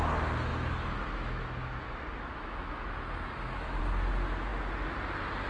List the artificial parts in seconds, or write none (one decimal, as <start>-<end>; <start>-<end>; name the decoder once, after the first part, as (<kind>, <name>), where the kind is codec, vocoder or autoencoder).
0.5-3.8 (autoencoder, DAC-VAE)